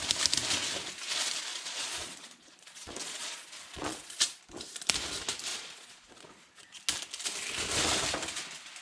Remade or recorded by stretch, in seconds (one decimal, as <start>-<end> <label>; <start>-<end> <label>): 0.0-1.5 recorded; 1.5-4.4 remade; 4.4-5.5 recorded; 5.5-6.8 remade; 6.8-8.8 recorded